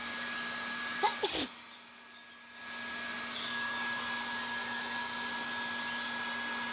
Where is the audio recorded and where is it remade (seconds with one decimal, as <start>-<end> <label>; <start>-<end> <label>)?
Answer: 0.0-6.7 recorded